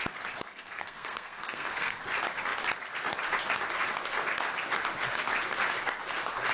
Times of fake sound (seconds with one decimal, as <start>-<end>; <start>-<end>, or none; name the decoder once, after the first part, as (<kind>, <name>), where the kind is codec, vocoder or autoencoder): 0.5-2.0 (codec, SNAC)